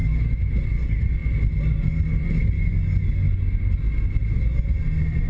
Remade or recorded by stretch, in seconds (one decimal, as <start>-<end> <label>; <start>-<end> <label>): 0.0-0.6 remade; 0.6-5.3 recorded